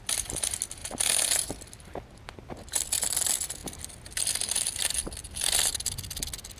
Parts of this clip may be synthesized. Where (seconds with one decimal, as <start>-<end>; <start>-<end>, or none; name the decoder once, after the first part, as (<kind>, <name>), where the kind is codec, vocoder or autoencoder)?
none

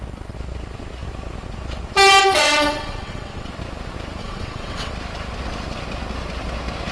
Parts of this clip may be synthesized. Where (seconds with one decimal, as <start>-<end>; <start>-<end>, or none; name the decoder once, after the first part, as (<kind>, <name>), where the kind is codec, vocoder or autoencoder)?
2.2-3.5 (vocoder, WaveNeXt); 4.2-4.9